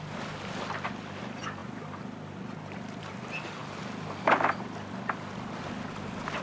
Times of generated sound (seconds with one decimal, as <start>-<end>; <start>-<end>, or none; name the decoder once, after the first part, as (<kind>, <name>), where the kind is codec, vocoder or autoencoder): none